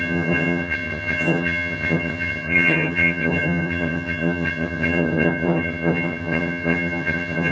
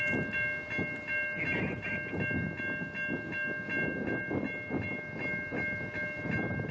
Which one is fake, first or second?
first